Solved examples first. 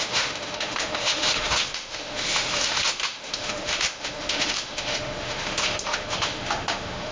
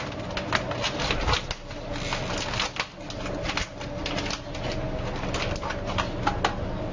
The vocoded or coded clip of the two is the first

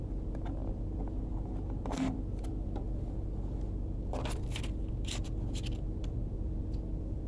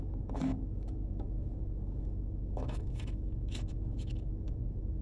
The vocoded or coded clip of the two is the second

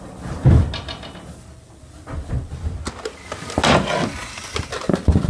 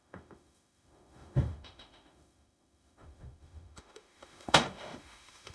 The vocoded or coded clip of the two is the second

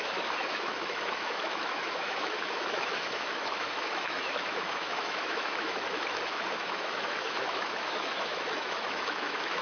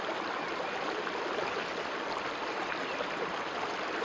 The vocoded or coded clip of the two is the first